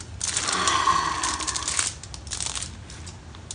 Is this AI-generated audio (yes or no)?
no